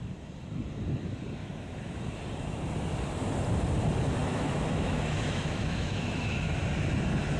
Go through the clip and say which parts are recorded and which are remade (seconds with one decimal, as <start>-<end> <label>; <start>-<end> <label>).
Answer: 0.0-1.4 recorded; 1.4-2.0 remade; 2.0-4.2 recorded; 4.2-6.6 remade; 6.6-7.4 recorded